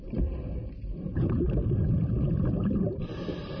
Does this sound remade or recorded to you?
remade